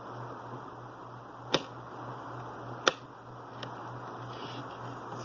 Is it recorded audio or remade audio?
recorded